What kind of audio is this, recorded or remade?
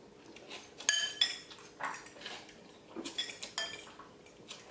recorded